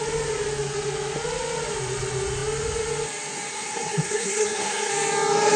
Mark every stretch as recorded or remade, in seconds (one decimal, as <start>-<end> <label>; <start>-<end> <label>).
0.0-3.5 recorded; 3.5-4.9 remade; 4.9-5.6 recorded